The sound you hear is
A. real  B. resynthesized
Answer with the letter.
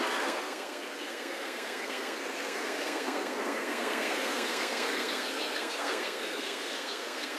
B